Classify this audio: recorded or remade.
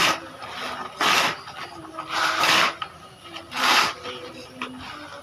remade